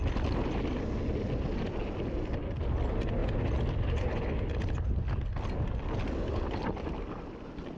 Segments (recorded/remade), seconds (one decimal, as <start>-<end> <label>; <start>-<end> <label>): 0.0-7.8 recorded